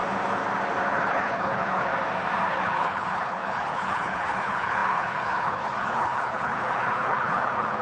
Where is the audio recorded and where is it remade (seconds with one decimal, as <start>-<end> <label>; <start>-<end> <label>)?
0.0-0.9 recorded; 0.9-1.9 remade; 1.9-2.5 recorded; 2.5-7.8 remade